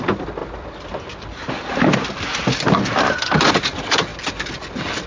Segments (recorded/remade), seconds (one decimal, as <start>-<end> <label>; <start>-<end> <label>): 0.0-5.1 recorded